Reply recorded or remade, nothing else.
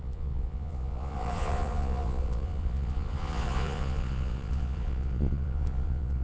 remade